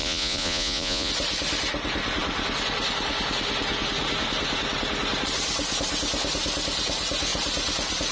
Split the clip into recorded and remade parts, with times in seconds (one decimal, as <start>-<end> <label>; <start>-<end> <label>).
0.0-1.1 remade; 1.1-8.1 recorded